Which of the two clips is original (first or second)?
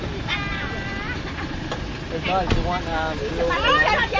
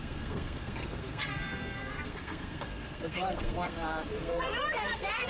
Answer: first